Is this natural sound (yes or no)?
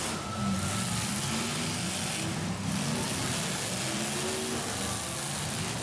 yes